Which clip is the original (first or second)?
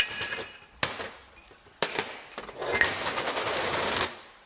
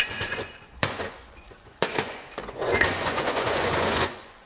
first